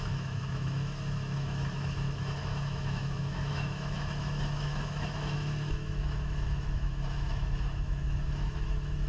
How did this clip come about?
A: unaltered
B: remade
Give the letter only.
B